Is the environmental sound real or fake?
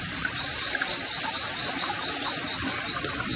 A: real